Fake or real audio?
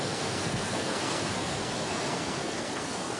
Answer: fake